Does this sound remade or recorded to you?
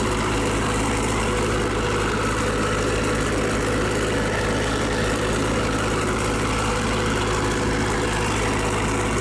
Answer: recorded